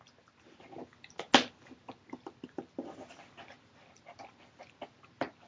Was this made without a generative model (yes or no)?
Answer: yes